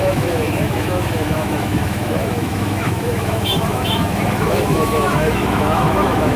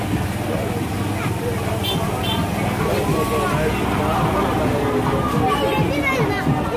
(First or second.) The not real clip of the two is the first